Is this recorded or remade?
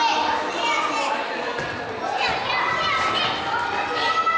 recorded